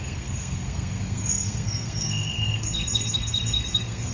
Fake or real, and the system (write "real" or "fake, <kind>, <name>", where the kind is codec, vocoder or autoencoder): fake, codec, SNAC